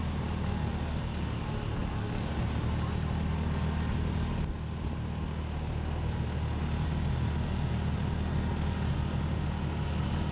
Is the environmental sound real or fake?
real